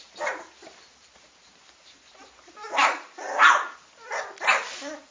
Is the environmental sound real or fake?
fake